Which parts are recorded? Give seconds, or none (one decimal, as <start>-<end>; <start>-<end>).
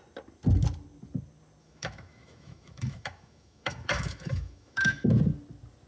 0.0-1.6; 5.1-5.9